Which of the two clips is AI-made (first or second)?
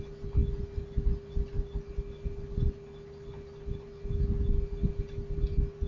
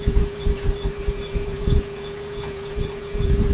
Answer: second